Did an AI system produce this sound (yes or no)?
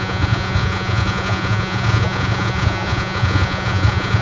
yes